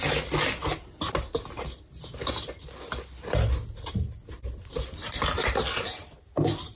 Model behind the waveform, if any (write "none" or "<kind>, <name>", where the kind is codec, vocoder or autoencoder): none